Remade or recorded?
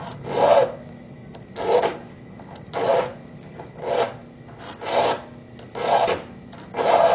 recorded